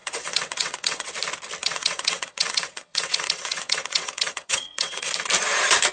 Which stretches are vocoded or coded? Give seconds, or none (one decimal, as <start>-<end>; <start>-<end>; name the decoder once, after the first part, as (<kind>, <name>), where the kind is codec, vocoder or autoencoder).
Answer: 0.0-1.1 (vocoder, WaveNeXt); 1.6-5.1